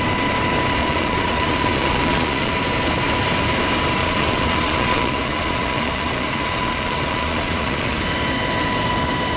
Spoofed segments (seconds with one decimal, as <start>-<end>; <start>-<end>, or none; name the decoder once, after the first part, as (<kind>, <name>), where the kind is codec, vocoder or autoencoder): 0.8-2.5 (vocoder, Vocos); 4.0-8.0